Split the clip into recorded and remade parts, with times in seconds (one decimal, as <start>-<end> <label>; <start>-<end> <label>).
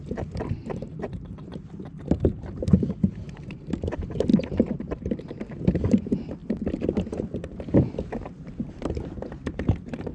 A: 0.0-6.4 remade; 6.4-7.7 recorded; 7.7-10.1 remade